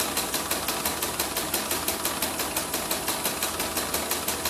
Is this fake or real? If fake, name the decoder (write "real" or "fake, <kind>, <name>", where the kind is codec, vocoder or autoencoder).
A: real